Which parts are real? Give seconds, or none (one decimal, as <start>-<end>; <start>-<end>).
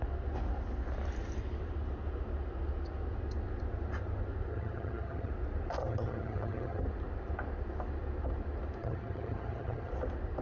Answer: 0.0-4.5; 5.3-5.8; 6.8-8.8; 9.9-10.4